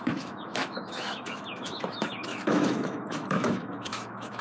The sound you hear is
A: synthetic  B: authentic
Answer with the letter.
A